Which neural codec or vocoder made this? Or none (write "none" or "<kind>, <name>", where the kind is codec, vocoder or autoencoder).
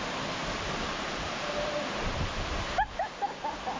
none